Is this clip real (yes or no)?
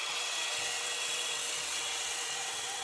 no